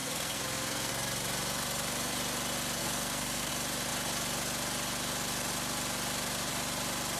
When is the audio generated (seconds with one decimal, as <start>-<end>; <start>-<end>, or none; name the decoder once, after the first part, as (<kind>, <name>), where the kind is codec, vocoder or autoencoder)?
0.0-0.9 (codec, SNAC); 2.8-3.5